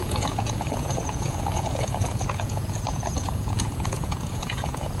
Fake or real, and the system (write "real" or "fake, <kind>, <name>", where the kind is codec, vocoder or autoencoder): fake, vocoder, Vocos